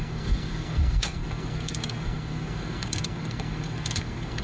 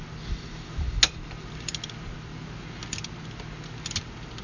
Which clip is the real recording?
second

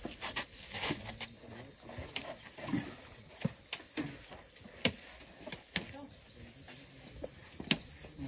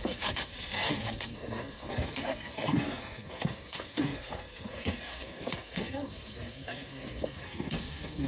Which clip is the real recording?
first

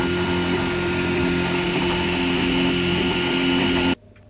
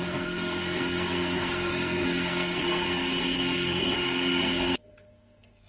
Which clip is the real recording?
first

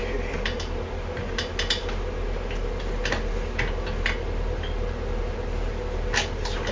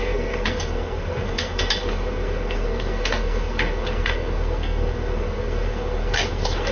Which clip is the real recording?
first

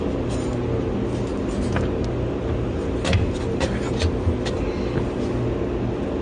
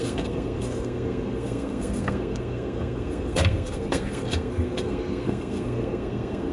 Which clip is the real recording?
first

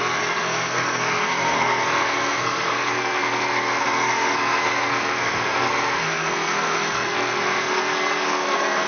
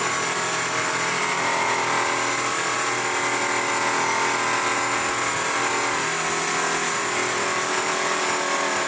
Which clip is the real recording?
second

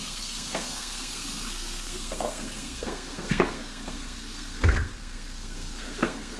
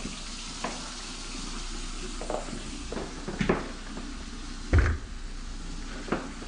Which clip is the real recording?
second